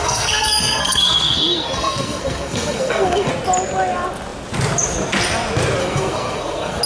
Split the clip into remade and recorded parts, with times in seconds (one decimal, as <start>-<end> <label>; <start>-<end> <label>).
0.0-3.3 remade; 3.3-5.8 recorded; 5.8-6.8 remade